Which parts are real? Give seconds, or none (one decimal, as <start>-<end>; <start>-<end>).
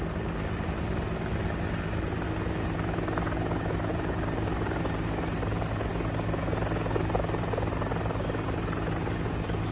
0.0-9.7